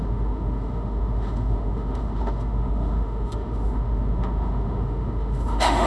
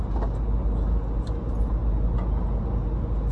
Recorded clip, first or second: second